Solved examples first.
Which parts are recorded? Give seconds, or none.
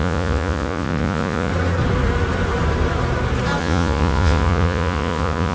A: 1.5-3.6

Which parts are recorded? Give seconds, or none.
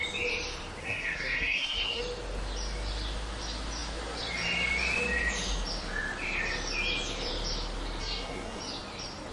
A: 0.0-0.8; 2.0-8.0; 8.6-9.3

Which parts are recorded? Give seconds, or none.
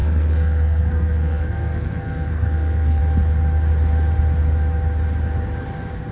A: 3.0-6.1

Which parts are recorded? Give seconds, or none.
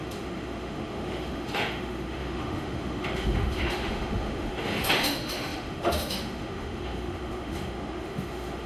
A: none